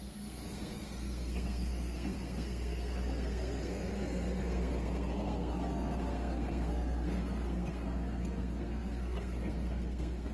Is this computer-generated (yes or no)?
yes